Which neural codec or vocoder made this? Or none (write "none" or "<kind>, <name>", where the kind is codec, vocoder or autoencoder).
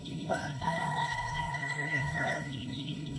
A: codec, SNAC